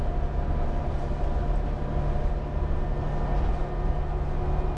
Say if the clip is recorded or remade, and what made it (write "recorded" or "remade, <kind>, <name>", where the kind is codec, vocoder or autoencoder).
recorded